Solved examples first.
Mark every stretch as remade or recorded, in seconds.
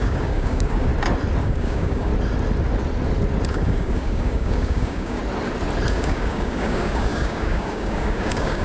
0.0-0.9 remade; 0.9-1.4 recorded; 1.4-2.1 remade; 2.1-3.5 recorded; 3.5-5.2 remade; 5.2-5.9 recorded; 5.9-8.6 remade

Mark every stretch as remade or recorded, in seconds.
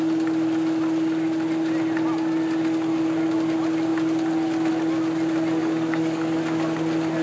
0.0-5.6 recorded; 5.6-6.4 remade; 6.4-7.2 recorded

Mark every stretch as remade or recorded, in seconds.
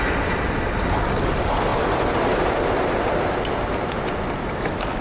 0.0-5.0 recorded